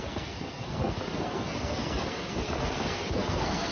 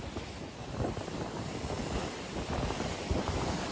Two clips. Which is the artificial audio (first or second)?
first